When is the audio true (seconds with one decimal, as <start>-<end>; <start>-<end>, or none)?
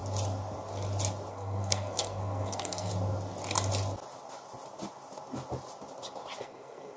0.0-1.3; 2.9-6.4